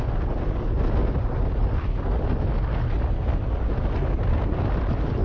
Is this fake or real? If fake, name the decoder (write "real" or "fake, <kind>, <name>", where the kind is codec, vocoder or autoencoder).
real